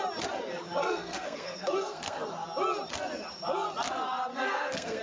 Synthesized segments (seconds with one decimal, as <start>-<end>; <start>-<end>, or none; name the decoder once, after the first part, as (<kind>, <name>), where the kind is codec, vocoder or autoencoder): 0.8-2.2 (codec, SNAC); 4.3-5.0